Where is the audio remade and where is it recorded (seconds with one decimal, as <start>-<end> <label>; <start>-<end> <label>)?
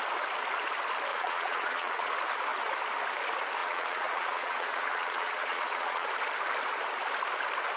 0.0-1.1 recorded; 1.1-2.1 remade; 2.1-3.6 recorded; 3.6-6.1 remade; 6.1-7.8 recorded